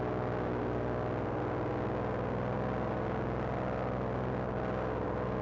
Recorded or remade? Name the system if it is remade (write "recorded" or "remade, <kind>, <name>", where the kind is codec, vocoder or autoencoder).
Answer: recorded